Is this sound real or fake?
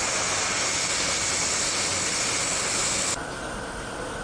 real